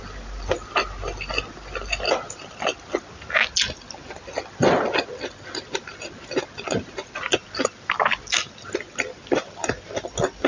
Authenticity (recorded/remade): recorded